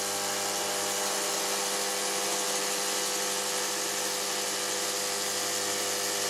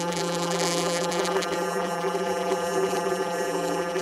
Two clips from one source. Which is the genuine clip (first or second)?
first